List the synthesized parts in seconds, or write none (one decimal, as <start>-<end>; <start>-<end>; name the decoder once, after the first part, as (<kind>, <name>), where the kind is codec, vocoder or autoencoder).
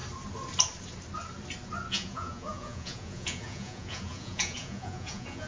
1.9-5.5 (vocoder, Vocos)